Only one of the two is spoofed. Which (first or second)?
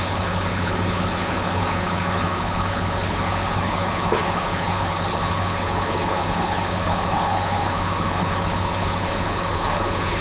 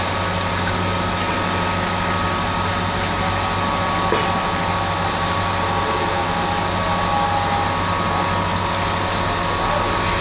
first